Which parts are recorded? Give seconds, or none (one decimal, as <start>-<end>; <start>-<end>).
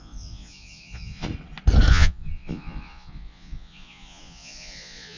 1.3-1.9